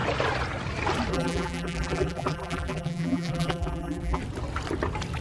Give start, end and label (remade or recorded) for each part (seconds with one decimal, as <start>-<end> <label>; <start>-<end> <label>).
0.0-1.1 recorded; 1.1-4.2 remade; 4.2-5.2 recorded